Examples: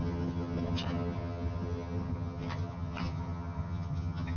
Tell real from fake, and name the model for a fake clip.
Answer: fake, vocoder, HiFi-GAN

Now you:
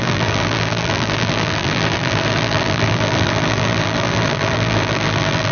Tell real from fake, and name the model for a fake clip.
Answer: fake, vocoder, BigVGAN v2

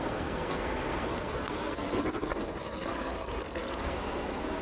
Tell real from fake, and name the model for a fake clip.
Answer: fake, codec, SNAC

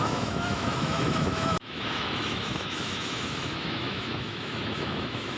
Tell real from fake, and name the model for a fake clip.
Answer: fake, autoencoder, DAC-VAE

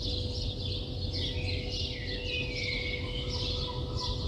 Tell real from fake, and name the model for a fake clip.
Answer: real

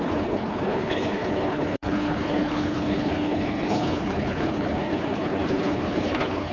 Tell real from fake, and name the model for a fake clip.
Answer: fake, codec, HILCodec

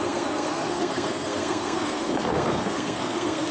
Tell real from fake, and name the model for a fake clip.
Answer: fake, codec, SNAC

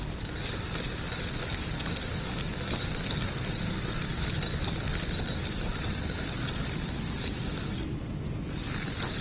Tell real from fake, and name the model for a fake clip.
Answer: real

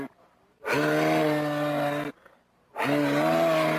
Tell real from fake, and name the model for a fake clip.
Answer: real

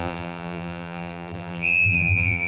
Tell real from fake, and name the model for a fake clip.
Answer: fake, vocoder, BigVGAN v2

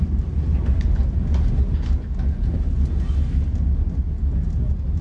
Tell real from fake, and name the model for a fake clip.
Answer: real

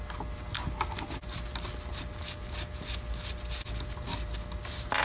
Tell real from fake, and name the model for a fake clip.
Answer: real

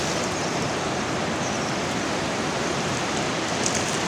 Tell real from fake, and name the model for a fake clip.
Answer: real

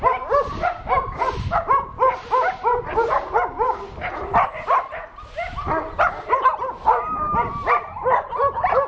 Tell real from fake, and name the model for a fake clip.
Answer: real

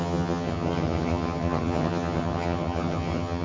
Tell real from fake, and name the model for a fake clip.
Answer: fake, vocoder, HiFi-GAN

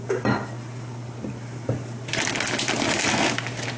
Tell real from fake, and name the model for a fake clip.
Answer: real